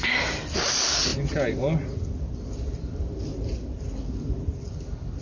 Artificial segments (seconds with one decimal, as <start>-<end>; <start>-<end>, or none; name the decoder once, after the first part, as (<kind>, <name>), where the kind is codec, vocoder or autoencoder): none